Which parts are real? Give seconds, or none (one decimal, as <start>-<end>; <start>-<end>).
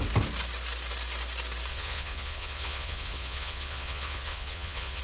0.0-1.7